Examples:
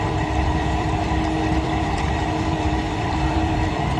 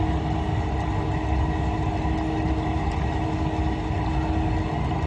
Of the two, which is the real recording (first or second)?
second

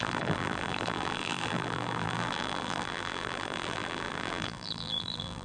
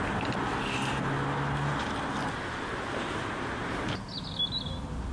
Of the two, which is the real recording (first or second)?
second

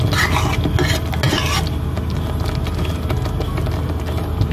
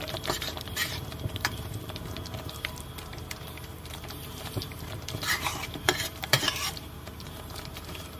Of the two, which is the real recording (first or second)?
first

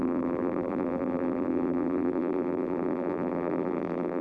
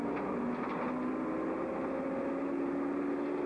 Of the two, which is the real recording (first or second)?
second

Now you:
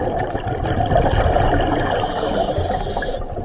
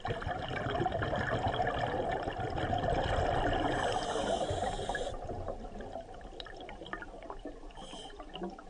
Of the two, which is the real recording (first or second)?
first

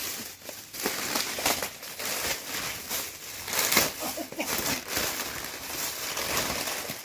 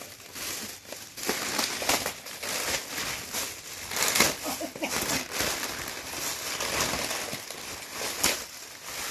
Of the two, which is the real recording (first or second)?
second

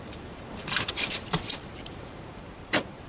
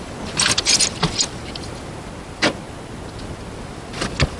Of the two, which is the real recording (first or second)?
second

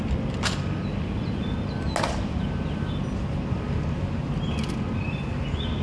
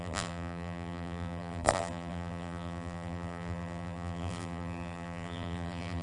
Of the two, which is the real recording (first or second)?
first